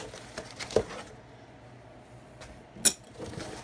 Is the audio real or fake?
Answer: real